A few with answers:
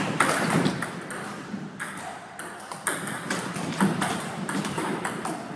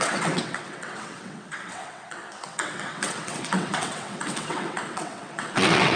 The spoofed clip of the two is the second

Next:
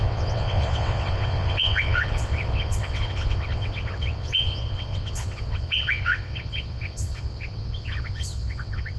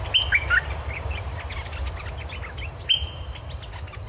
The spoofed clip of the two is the first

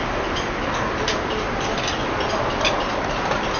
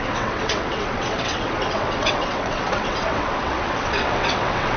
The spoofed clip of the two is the second